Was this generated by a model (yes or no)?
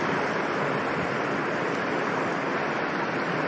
no